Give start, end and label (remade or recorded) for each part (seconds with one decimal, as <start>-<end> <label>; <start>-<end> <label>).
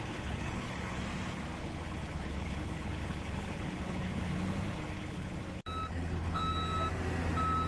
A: 0.0-1.0 remade; 1.0-1.6 recorded; 1.6-4.3 remade; 4.3-4.9 recorded; 4.9-5.4 remade; 5.4-5.9 recorded; 5.9-6.4 remade; 6.4-7.7 recorded